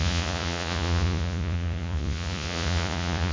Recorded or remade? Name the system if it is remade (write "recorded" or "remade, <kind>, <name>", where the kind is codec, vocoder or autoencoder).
remade, vocoder, Vocos